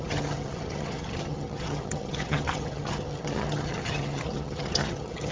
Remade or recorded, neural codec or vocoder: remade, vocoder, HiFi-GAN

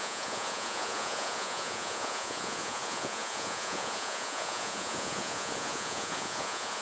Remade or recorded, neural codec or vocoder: remade, vocoder, Vocos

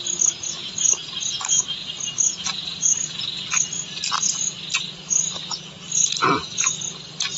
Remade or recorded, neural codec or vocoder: recorded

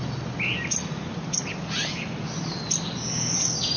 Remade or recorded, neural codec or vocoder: recorded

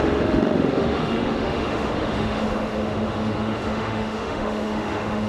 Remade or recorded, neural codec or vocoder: remade, autoencoder, DAC-VAE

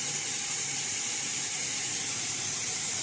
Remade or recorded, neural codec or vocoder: remade, vocoder, BigVGAN v2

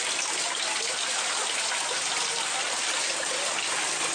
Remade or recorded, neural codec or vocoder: recorded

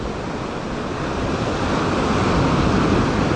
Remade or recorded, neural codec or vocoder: recorded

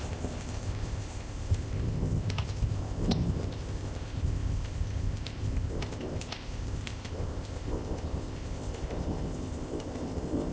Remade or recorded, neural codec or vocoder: remade, codec, ZipCodec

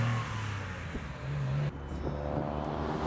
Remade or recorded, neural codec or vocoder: recorded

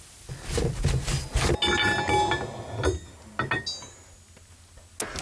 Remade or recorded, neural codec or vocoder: recorded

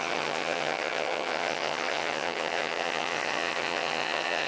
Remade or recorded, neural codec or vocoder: remade, vocoder, HiFi-GAN